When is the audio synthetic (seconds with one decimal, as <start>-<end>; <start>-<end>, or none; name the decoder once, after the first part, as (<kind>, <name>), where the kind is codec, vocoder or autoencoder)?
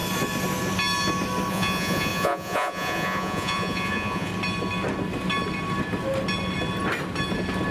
1.5-4.3 (vocoder, Vocos)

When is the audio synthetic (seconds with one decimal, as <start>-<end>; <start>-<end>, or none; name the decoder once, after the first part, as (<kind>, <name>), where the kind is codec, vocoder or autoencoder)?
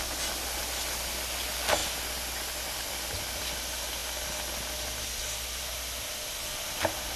none